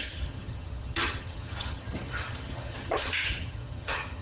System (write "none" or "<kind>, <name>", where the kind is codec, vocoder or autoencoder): vocoder, HiFi-GAN